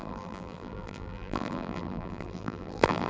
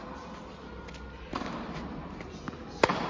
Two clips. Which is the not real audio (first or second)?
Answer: first